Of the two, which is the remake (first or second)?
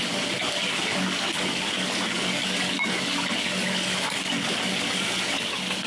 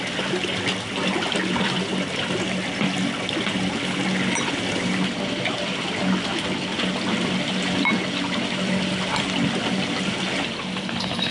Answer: first